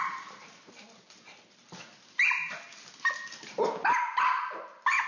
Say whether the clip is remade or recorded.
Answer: recorded